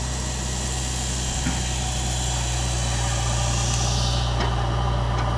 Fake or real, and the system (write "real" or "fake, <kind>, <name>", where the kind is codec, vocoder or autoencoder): real